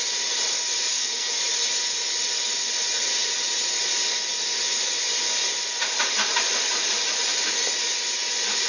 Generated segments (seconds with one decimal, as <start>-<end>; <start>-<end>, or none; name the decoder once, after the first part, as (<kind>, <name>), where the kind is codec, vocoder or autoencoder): 0.9-1.4 (codec, SNAC)